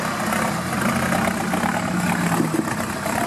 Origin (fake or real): real